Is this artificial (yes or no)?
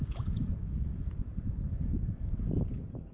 yes